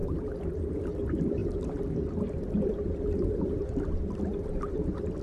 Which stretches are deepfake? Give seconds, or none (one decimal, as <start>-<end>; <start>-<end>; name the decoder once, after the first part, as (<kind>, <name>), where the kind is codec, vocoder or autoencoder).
none